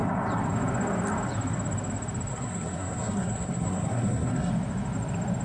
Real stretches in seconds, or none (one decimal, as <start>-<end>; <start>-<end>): 0.0-2.3; 4.5-5.4